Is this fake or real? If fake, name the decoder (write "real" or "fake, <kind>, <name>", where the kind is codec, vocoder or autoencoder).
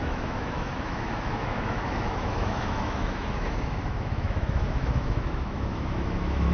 fake, autoencoder, DAC-VAE